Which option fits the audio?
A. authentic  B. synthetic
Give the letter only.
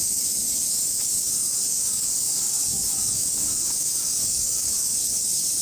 B